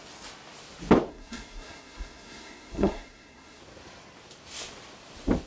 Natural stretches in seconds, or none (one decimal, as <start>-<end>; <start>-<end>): 0.0-1.1; 3.6-5.5